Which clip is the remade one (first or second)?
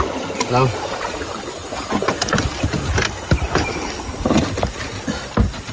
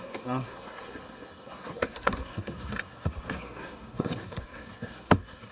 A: second